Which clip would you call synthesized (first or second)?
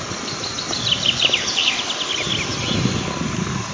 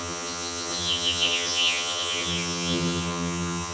second